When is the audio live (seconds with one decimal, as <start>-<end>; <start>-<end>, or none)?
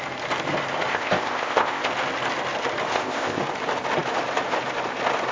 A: 0.0-0.9; 1.9-2.9; 3.4-5.3